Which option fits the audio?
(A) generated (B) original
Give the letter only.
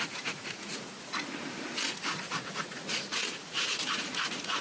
A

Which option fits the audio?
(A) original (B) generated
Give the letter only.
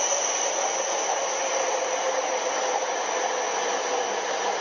A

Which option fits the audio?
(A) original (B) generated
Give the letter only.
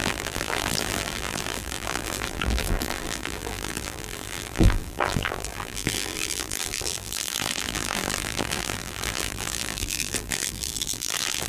B